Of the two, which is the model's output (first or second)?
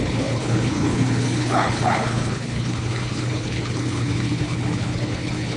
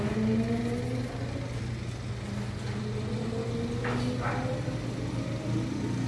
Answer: first